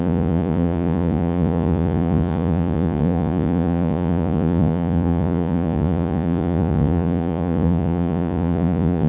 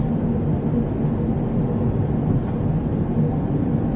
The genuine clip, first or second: second